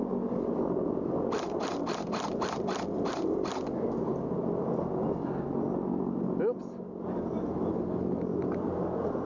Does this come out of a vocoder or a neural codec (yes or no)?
no